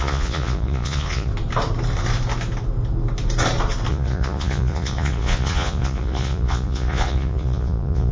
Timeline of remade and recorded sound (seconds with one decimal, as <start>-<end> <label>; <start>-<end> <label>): 0.0-1.3 remade; 1.3-3.9 recorded; 3.9-8.1 remade